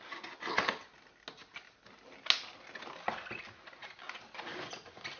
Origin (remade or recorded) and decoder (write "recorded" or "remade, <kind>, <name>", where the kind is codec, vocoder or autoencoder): recorded